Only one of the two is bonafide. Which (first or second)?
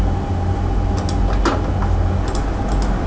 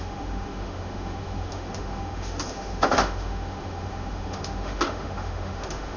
first